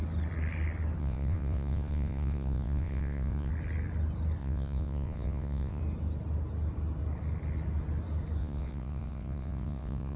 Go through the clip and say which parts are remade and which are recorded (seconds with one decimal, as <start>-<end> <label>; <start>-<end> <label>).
0.0-1.0 recorded; 1.0-3.5 remade; 3.5-4.4 recorded; 4.4-5.8 remade; 5.8-8.4 recorded; 8.4-10.2 remade